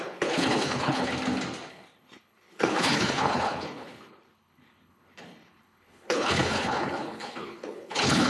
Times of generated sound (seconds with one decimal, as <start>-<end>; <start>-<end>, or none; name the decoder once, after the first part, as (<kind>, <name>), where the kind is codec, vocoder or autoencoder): 0.0-1.1 (codec, HILCodec); 1.7-8.3